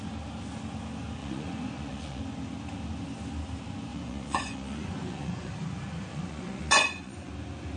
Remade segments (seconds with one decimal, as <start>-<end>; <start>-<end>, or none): 1.2-2.2; 3.9-5.5; 6.1-7.3